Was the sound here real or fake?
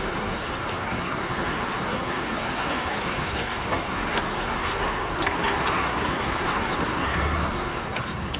fake